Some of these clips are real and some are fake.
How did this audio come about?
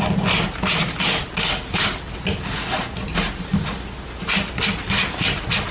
real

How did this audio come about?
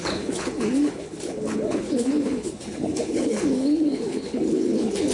fake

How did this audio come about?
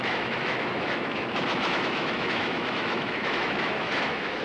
fake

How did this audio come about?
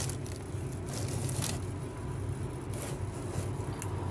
real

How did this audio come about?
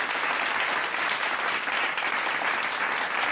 real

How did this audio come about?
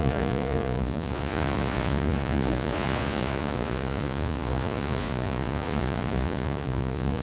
fake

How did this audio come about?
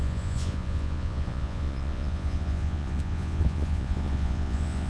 fake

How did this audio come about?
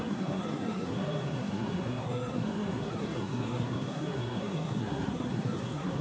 fake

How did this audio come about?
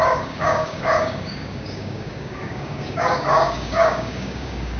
fake